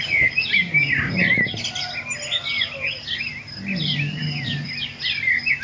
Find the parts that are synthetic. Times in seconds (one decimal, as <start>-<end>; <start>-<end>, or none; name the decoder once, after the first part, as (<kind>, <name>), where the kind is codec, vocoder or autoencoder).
none